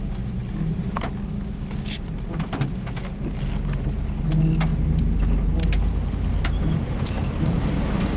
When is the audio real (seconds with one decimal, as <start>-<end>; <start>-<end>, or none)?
0.0-8.2

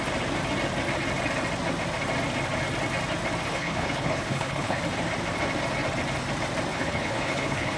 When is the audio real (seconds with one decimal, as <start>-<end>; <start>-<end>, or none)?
0.0-3.5; 4.8-6.7

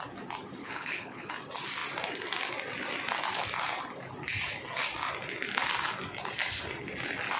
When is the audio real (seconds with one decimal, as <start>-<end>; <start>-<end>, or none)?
0.0-0.6; 1.3-7.4

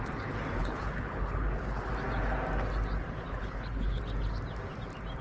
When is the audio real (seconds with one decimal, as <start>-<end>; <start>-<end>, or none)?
0.0-0.6; 1.9-3.3; 4.0-5.2